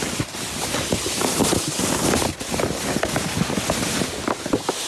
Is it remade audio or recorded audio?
recorded